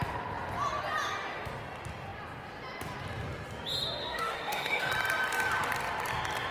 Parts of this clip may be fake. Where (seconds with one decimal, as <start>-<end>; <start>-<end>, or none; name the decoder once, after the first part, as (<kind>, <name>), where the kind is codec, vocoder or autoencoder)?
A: 4.0-4.9 (autoencoder, DAC-VAE)